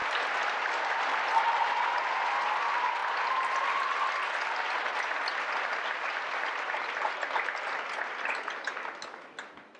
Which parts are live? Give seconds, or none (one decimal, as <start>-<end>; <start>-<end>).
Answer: 0.0-9.8